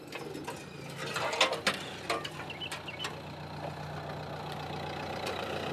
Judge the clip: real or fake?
real